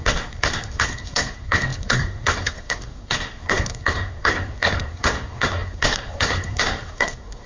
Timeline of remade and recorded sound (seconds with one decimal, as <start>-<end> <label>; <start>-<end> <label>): 0.0-7.5 remade